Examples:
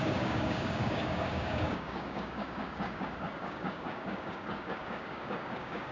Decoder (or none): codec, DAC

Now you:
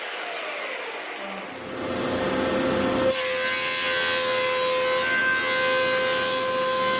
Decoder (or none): none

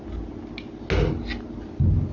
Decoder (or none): none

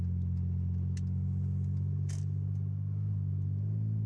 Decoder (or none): none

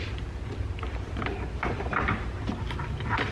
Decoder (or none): none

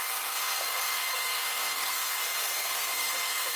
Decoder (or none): codec, SNAC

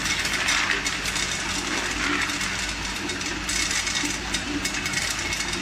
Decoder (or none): none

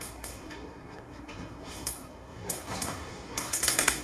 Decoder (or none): codec, SNAC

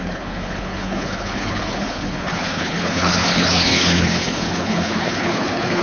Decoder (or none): codec, HILCodec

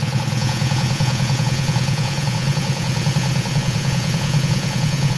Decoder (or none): vocoder, Vocos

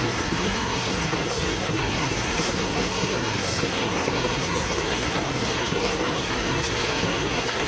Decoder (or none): codec, SNAC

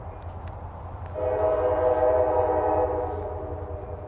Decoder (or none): none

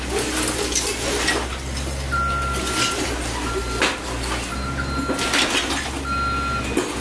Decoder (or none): none